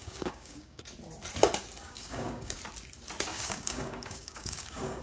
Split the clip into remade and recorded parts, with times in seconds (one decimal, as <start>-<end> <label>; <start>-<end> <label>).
0.0-0.8 remade; 0.8-1.8 recorded; 1.8-2.6 remade; 2.6-3.3 recorded; 3.3-5.0 remade